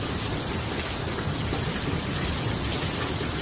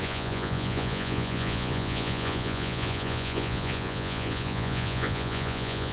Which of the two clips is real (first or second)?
first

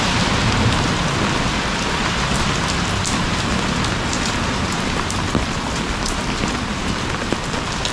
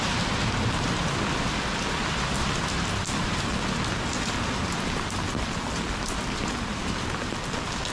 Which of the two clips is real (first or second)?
second